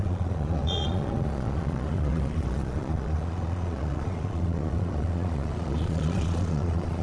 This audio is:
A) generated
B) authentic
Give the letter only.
A